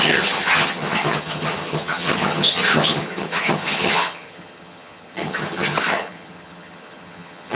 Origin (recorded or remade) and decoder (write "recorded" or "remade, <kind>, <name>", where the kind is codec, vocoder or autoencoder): remade, vocoder, HiFi-GAN